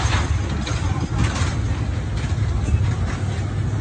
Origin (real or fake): real